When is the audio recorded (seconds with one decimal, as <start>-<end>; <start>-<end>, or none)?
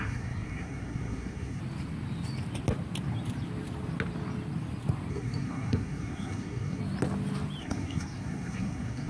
1.6-5.1; 6.8-7.6